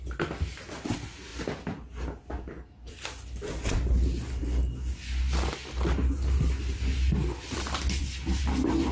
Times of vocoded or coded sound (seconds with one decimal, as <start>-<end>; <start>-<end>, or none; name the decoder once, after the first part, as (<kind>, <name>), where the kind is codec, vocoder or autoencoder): none